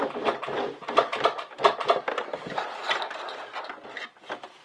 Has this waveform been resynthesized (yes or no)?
no